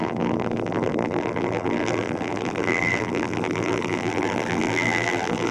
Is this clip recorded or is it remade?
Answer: remade